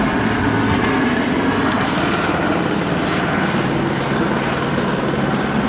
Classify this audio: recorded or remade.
recorded